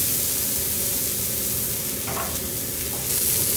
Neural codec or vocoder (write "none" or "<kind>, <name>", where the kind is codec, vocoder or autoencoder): none